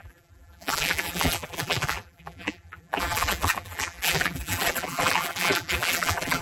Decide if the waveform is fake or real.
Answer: fake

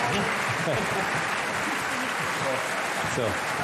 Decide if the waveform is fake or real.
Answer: real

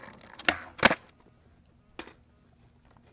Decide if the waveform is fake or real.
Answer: real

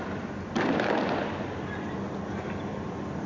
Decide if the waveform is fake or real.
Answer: real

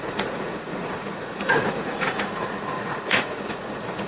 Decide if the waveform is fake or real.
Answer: fake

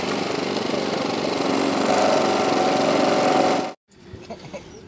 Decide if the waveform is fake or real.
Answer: real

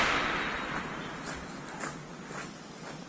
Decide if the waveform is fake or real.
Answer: real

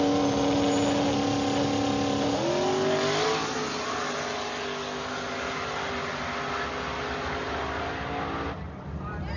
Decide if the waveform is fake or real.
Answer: real